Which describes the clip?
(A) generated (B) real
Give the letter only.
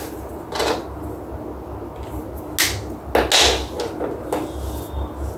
B